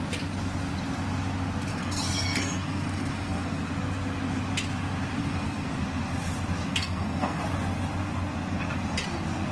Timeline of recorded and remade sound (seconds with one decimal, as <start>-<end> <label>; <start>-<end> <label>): 0.0-1.7 recorded; 1.7-3.7 remade; 3.7-5.2 recorded; 5.2-5.7 remade; 5.7-6.7 recorded; 6.7-7.4 remade; 7.4-9.5 recorded